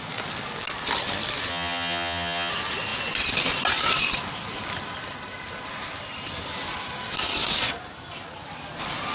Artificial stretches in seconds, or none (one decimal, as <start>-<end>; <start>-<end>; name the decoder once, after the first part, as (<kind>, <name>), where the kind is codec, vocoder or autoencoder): 1.5-2.5 (vocoder, HiFi-GAN)